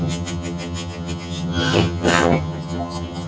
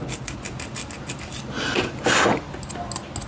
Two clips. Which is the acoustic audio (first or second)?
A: second